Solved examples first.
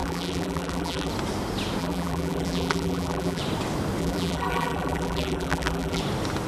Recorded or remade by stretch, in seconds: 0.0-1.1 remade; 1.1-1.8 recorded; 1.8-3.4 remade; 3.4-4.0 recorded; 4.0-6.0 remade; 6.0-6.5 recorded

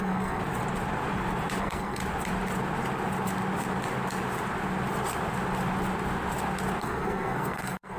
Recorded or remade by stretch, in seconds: 0.0-0.4 remade; 0.4-1.6 recorded; 1.6-2.0 remade; 2.0-6.8 recorded; 6.8-8.0 remade

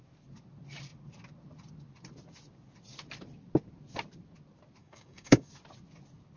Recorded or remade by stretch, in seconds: 0.0-4.8 recorded; 4.8-5.5 remade; 5.5-6.4 recorded

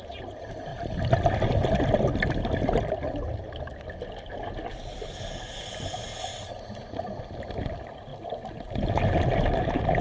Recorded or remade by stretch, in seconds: 0.0-10.0 recorded

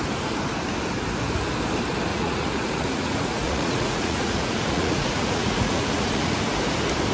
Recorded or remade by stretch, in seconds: 0.0-2.1 recorded; 2.1-6.4 remade; 6.4-7.1 recorded

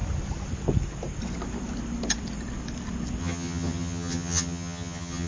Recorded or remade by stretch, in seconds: 0.0-3.2 recorded; 3.2-5.3 remade

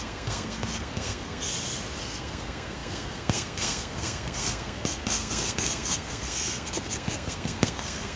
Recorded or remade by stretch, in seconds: 0.0-1.5 remade; 1.5-2.0 recorded; 2.0-8.2 remade